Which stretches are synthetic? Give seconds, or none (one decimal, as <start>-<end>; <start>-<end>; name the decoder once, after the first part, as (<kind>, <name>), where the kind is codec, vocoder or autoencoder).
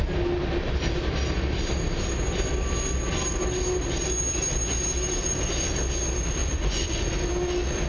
6.4-7.3 (vocoder, Vocos)